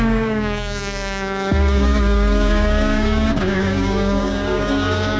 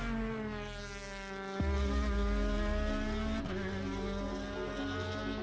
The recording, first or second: second